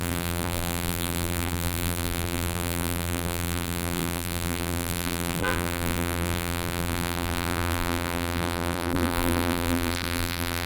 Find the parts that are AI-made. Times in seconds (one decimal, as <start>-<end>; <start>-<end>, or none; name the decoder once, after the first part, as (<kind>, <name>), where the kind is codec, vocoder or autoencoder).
0.0-10.7 (vocoder, BigVGAN v2)